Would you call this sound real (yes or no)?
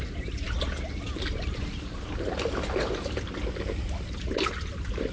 yes